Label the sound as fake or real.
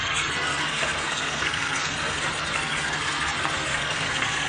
fake